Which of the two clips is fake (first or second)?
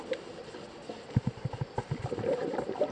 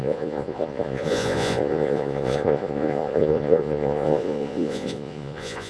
second